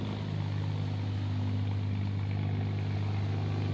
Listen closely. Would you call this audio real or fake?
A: real